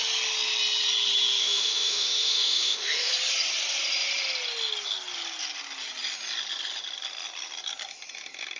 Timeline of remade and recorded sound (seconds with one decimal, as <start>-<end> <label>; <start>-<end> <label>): 0.0-1.4 recorded; 1.4-3.1 remade; 3.1-8.6 recorded